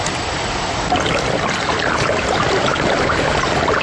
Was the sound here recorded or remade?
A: recorded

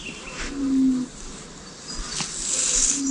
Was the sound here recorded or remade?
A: recorded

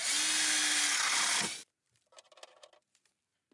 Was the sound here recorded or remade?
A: recorded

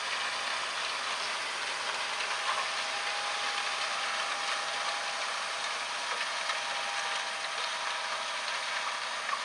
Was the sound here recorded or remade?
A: recorded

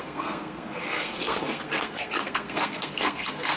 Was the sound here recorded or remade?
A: remade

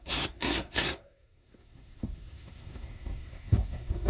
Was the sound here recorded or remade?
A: remade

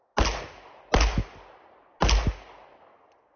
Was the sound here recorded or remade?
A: recorded